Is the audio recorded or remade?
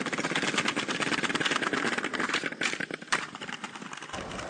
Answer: recorded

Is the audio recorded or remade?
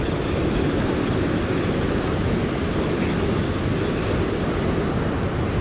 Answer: recorded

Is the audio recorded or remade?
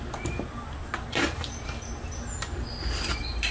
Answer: recorded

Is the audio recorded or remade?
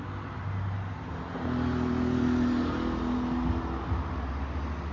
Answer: recorded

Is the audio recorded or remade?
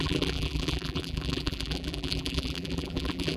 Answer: remade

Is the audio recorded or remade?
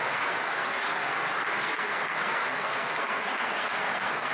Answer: remade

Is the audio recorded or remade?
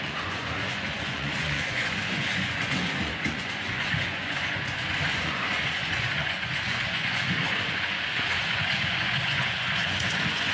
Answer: remade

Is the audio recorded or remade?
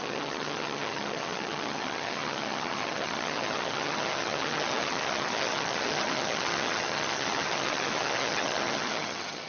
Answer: remade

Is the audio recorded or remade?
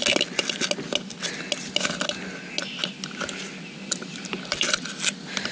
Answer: recorded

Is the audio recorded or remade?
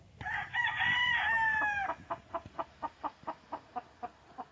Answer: recorded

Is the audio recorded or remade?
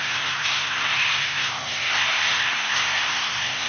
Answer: remade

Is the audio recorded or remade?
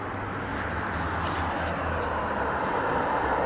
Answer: recorded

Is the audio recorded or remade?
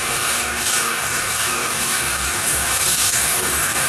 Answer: remade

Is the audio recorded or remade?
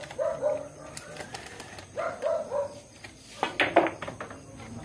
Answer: recorded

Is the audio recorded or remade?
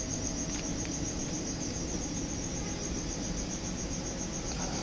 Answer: recorded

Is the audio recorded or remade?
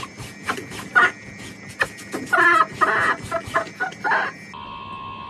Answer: recorded